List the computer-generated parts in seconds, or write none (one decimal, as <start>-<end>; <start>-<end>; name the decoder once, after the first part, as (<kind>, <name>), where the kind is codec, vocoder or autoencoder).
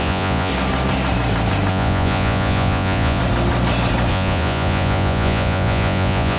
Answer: 0.0-0.5 (vocoder, Vocos); 1.7-3.2; 4.1-6.4